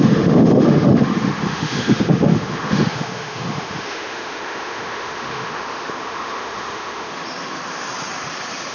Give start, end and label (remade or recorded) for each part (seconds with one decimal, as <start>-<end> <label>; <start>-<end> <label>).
0.0-7.1 remade; 7.1-8.7 recorded